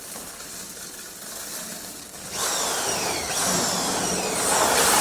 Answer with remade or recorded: recorded